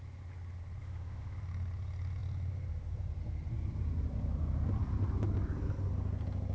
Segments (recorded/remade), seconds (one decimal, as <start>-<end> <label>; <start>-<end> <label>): 0.0-0.8 recorded; 0.8-1.4 remade; 1.4-6.5 recorded